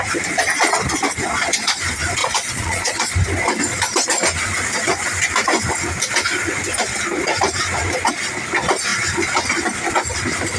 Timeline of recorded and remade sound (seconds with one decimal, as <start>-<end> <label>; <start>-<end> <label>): 0.0-2.2 recorded; 2.2-3.1 remade; 3.1-10.6 recorded